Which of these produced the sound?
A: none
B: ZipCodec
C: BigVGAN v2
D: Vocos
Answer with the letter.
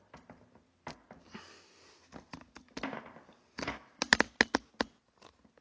A